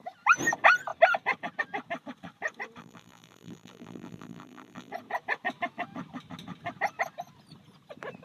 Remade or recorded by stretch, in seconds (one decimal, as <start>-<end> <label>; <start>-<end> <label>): 0.0-2.8 recorded; 2.8-4.9 remade; 4.9-8.2 recorded